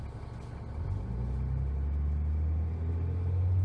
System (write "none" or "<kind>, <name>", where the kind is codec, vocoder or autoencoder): none